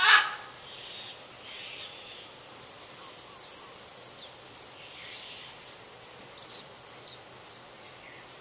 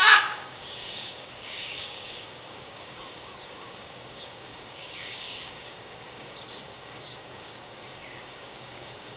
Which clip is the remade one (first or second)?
second